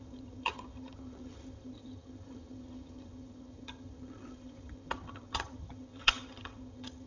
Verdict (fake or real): fake